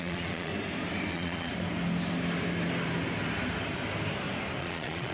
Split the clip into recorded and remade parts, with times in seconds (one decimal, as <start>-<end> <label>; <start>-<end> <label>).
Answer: 0.0-0.5 remade; 0.5-1.1 recorded; 1.1-1.5 remade; 1.5-4.6 recorded; 4.6-5.1 remade